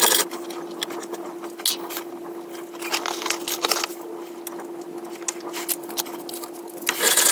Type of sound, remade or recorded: recorded